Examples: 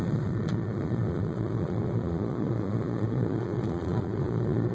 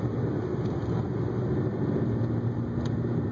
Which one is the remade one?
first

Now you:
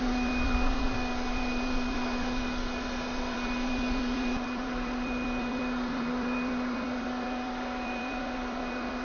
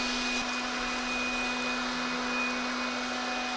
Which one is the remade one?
first